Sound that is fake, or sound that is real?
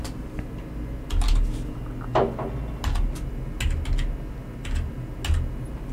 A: real